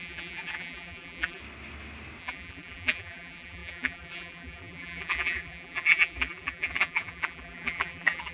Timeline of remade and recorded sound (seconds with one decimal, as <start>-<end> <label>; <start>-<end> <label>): 0.0-1.4 remade; 1.4-2.2 recorded; 2.2-8.3 remade